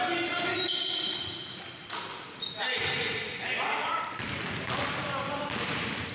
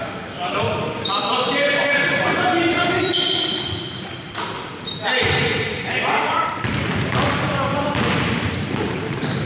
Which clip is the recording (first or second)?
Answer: first